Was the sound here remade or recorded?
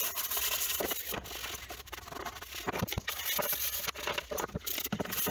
recorded